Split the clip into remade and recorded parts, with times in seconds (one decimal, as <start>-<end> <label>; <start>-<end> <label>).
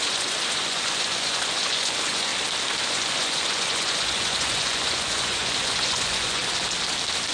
0.0-2.3 remade; 2.3-2.9 recorded; 2.9-6.4 remade; 6.4-7.3 recorded